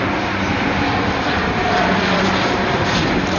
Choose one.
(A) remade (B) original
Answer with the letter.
A